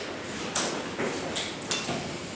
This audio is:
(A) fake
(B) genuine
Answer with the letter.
B